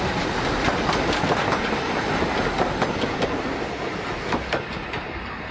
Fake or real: real